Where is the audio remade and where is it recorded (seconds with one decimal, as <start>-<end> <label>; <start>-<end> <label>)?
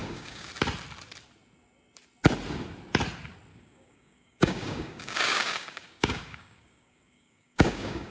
0.0-0.5 remade; 0.5-3.5 recorded; 3.5-8.1 remade